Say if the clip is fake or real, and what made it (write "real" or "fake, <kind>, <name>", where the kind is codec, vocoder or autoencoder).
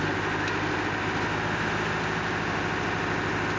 real